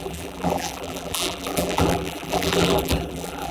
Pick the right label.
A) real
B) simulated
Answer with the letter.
B